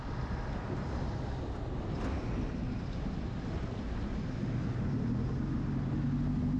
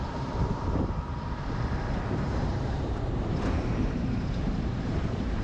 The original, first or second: first